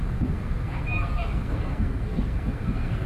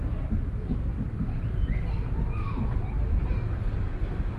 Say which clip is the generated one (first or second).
first